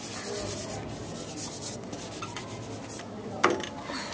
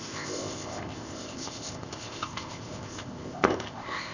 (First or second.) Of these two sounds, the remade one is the second